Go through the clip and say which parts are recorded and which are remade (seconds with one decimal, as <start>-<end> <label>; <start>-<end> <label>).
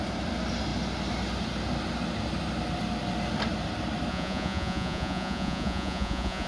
0.0-4.1 recorded; 4.1-6.5 remade